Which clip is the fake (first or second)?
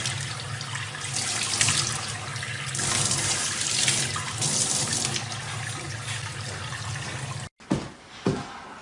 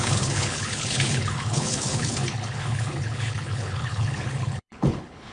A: second